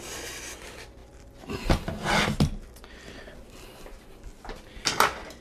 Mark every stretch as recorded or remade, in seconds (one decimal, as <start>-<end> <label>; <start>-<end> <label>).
0.0-5.4 recorded